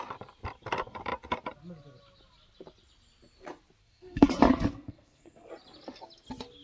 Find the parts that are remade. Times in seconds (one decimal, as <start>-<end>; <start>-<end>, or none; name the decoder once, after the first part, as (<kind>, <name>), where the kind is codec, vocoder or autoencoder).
3.8-4.3 (codec, SNAC); 4.7-5.5